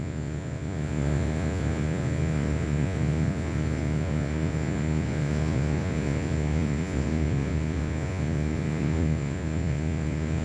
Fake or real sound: fake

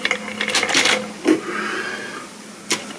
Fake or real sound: real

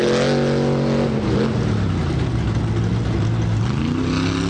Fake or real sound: real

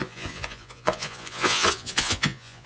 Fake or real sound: fake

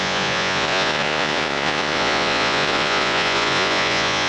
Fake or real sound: fake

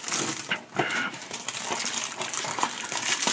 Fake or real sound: real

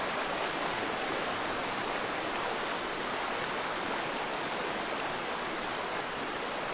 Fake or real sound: real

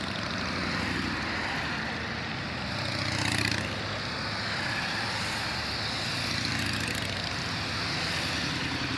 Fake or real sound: real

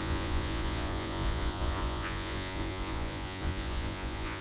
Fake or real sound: fake